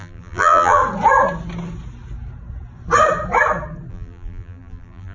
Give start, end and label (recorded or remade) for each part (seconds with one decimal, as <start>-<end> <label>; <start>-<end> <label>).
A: 0.0-0.8 remade; 0.8-3.9 recorded; 3.9-5.1 remade